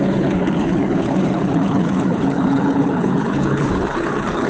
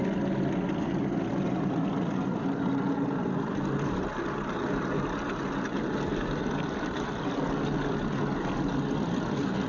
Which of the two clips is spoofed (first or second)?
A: first